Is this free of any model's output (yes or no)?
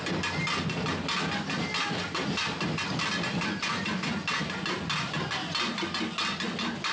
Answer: yes